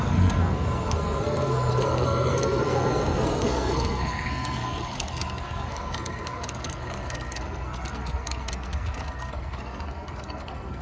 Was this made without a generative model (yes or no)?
no